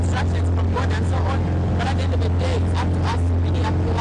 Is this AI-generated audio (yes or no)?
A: no